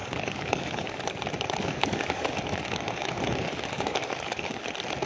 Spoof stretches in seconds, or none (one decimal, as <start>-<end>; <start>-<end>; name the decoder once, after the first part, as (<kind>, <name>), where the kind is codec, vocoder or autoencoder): 0.0-1.0 (codec, DAC); 1.6-4.6